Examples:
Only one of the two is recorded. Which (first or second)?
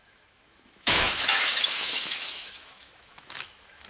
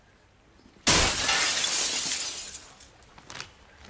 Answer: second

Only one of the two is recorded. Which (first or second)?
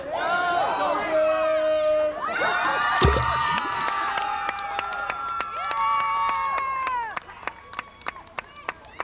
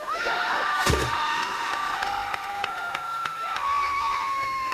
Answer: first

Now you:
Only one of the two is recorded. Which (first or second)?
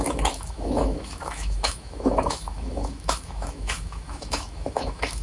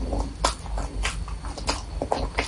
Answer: second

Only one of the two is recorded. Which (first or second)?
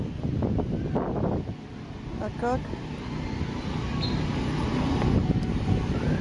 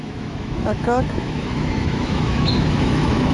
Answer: first